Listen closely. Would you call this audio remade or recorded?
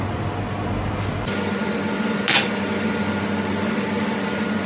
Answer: recorded